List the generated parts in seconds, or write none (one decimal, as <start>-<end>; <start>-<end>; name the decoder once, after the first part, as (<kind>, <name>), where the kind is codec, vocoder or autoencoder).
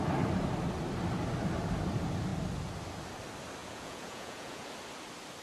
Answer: 3.6-4.7 (vocoder, Vocos)